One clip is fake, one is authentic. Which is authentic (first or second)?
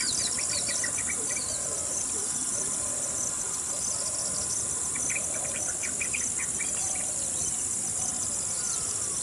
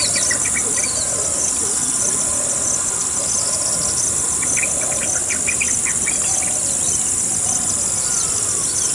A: second